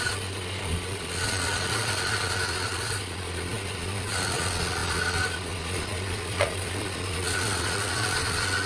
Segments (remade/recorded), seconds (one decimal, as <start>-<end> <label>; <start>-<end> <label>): 0.0-8.7 remade